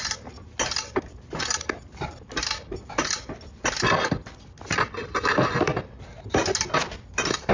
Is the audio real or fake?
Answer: real